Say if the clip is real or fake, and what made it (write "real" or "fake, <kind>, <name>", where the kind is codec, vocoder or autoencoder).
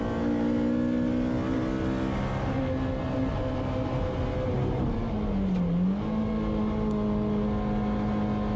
real